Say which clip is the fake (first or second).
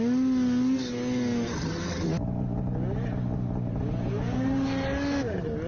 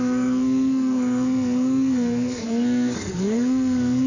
second